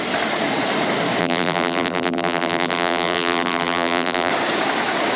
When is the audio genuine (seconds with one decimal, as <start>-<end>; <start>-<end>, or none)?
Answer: 0.0-1.2; 4.3-5.2